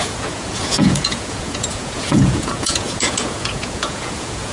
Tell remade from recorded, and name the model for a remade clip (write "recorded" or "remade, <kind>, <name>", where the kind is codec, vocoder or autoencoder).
remade, vocoder, Vocos